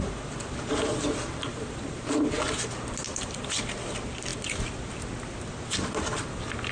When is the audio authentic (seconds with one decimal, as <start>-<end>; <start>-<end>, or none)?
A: 0.0-1.5; 2.0-3.1; 3.6-6.7